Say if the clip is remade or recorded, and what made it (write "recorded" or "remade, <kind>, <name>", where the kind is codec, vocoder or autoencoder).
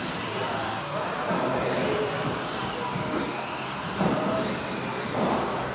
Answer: recorded